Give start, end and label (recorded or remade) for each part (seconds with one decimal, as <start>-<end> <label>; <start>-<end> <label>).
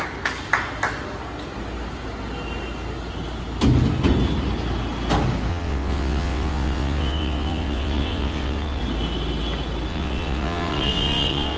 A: 0.0-5.5 recorded; 5.5-8.8 remade; 8.8-9.9 recorded; 9.9-11.6 remade